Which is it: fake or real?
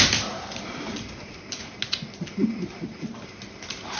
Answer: real